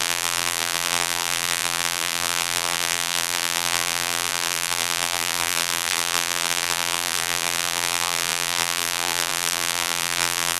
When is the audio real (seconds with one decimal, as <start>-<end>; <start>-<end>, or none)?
none